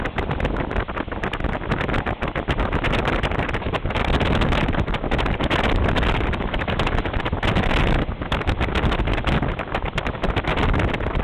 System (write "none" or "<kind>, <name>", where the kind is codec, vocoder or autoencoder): none